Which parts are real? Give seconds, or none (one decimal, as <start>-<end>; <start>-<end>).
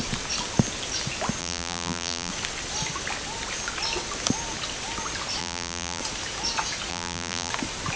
0.0-1.4; 2.3-5.4; 6.0-6.9; 7.5-8.0